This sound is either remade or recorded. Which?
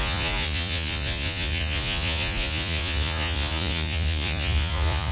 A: remade